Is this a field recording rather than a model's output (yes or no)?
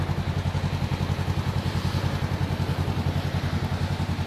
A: yes